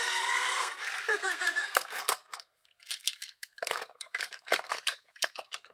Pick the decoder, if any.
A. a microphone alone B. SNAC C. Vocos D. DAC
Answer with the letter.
B